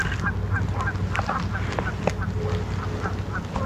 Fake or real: real